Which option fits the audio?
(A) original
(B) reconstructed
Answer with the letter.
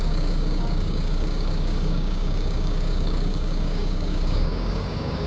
B